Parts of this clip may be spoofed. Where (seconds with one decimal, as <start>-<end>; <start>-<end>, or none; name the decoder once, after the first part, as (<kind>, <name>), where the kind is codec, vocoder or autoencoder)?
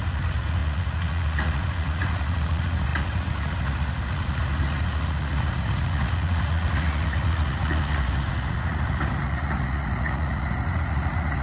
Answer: 0.0-11.4 (vocoder, Vocos)